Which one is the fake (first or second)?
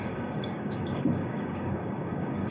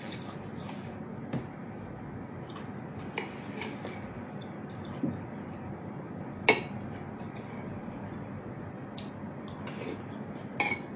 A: first